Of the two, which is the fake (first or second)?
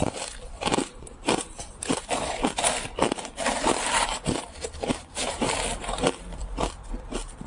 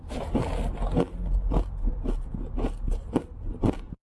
first